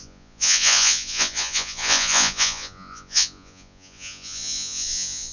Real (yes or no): no